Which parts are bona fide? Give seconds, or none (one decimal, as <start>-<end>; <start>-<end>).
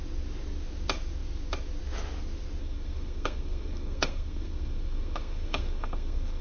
0.0-2.6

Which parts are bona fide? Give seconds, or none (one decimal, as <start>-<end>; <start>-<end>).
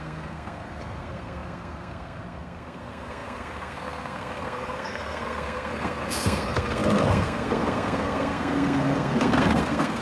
none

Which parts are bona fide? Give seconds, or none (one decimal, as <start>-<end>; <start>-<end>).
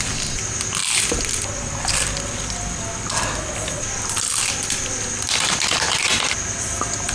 0.0-7.1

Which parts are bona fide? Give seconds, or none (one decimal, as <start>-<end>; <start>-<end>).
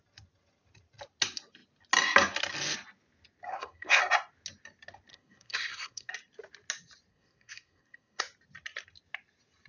0.0-3.5; 4.0-5.1; 6.1-7.1; 8.2-9.7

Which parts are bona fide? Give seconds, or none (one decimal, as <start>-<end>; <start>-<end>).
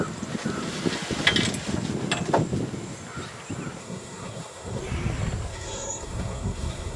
0.0-3.8; 4.8-5.5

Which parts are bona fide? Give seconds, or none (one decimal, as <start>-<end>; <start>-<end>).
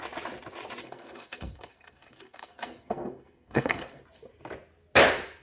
0.0-0.8; 4.0-5.4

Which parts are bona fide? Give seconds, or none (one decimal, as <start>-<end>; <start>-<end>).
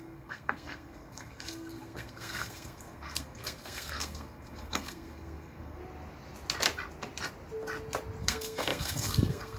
5.8-8.2